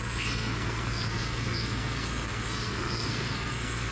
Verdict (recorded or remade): remade